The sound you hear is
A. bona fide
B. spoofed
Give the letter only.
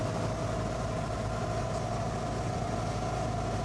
A